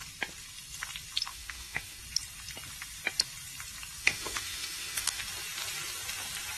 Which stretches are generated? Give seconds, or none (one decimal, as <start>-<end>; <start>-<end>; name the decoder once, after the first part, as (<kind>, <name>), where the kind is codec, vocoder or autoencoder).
1.3-2.0 (autoencoder, DAC-VAE); 4.0-5.2